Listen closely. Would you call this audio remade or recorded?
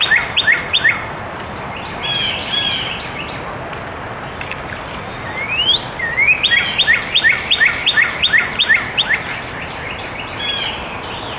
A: recorded